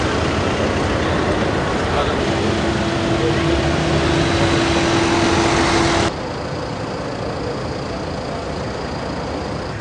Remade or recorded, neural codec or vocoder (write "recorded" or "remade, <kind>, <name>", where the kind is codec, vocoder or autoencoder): recorded